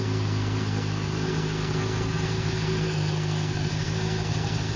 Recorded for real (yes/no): no